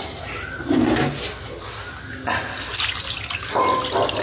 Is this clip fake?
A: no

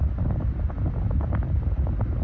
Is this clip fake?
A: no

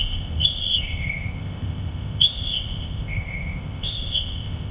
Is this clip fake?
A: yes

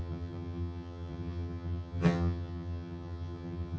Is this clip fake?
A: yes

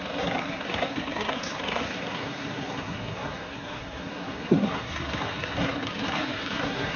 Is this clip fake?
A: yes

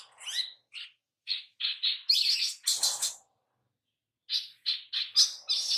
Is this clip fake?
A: no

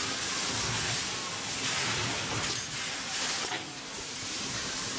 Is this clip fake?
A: no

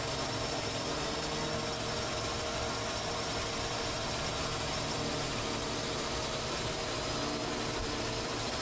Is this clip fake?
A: no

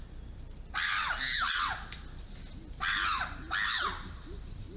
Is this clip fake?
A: no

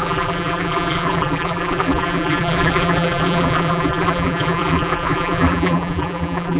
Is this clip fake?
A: yes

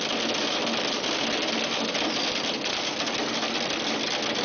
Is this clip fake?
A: no